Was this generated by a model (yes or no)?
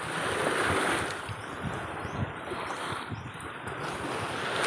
yes